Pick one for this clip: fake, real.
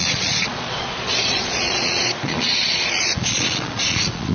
fake